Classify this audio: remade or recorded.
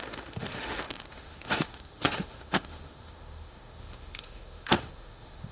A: remade